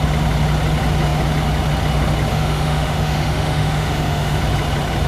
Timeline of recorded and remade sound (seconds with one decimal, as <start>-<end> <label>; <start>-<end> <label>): 0.0-2.3 recorded; 2.3-4.4 remade; 4.4-5.1 recorded